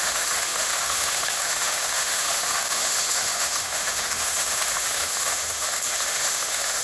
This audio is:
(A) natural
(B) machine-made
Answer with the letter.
B